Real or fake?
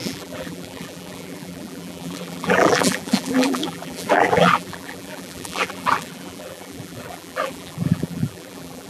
fake